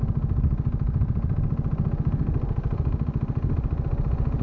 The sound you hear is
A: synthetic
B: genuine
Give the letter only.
B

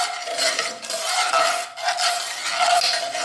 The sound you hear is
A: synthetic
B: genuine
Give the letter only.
B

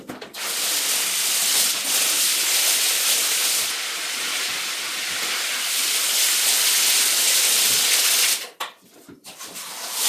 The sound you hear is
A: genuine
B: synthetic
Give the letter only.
A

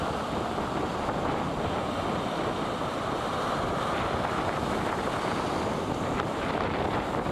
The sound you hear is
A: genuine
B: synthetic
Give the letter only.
A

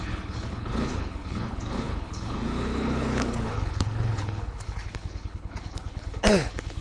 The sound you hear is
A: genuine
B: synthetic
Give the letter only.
B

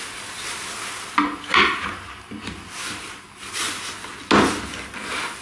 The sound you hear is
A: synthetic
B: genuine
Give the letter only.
B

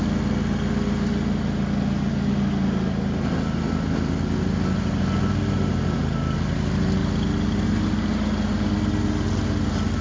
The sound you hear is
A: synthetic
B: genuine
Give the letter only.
B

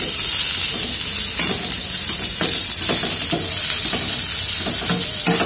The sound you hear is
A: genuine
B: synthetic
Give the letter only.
A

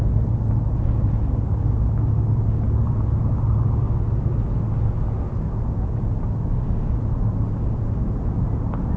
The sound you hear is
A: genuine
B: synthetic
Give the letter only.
A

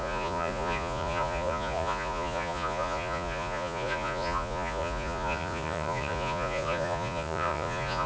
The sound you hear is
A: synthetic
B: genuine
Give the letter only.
A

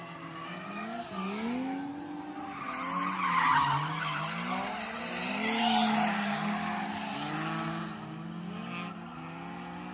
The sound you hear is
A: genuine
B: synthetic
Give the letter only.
A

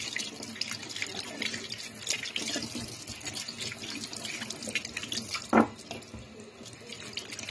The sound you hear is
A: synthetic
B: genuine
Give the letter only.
B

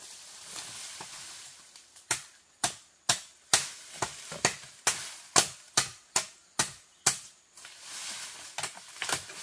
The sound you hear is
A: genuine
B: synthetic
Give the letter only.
A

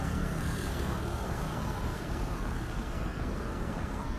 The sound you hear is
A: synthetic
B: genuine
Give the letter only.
A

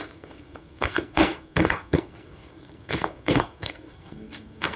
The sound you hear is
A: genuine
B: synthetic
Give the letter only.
B